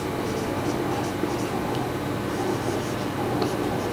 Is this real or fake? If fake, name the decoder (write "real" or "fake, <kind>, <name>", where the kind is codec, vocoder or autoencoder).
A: real